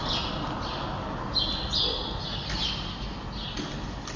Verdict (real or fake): real